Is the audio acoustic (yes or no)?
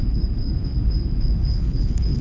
no